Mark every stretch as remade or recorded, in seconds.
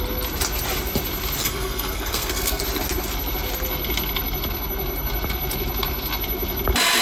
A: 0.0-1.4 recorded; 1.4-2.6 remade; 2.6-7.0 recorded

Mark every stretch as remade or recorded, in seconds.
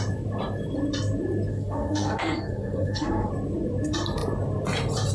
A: 0.0-1.5 recorded; 1.5-3.3 remade; 3.3-5.1 recorded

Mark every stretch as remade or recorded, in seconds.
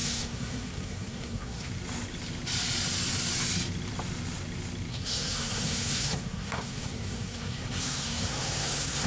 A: 0.0-1.7 remade; 1.7-4.9 recorded; 4.9-9.1 remade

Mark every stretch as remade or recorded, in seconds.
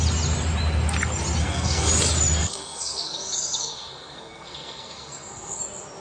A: 0.0-1.4 recorded; 1.4-1.9 remade; 1.9-2.4 recorded; 2.4-5.6 remade; 5.6-6.0 recorded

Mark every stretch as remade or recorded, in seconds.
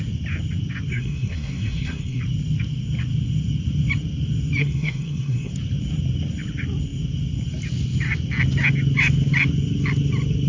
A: 0.0-0.9 recorded; 0.9-2.2 remade; 2.2-4.6 recorded; 4.6-5.5 remade; 5.5-10.5 recorded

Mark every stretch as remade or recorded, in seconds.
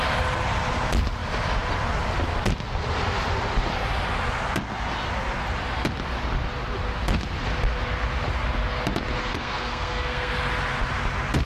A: 0.0-9.2 recorded; 9.2-10.3 remade; 10.3-11.5 recorded